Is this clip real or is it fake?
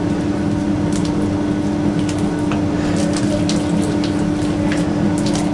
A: real